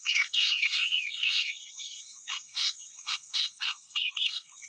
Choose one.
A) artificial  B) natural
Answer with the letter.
A